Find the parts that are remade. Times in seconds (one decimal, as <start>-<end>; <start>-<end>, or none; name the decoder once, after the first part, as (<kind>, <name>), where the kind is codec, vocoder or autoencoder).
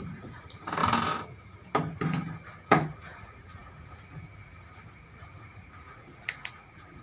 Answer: 0.0-0.8 (vocoder, Vocos); 2.7-7.0